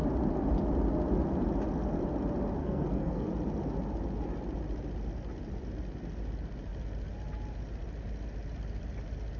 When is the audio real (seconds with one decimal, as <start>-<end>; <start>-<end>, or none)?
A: 0.0-2.6; 3.3-9.4